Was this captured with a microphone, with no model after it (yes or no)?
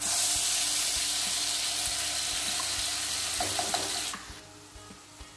yes